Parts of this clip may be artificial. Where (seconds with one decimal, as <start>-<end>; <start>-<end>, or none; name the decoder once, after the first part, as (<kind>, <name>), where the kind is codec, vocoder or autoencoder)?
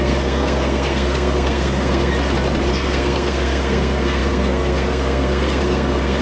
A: 0.0-2.1 (codec, SNAC); 2.7-6.2